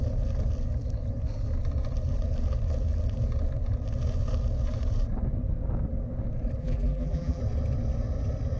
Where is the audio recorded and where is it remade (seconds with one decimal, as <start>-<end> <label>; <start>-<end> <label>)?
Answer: 0.0-6.6 recorded; 6.6-7.4 remade; 7.4-8.6 recorded